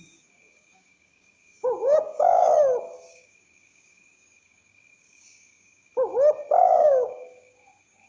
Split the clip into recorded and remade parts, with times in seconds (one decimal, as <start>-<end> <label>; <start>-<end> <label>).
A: 0.0-2.5 remade; 2.5-3.1 recorded; 3.1-5.9 remade; 5.9-6.6 recorded; 6.6-8.1 remade